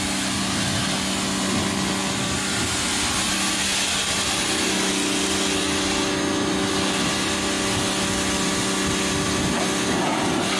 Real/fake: real